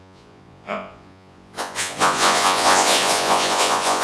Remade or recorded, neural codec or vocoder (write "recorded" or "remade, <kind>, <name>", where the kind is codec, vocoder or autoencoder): remade, vocoder, Vocos